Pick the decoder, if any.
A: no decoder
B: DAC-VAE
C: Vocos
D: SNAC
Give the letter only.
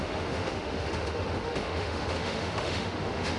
B